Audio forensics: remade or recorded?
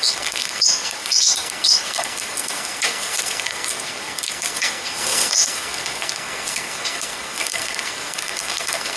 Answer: remade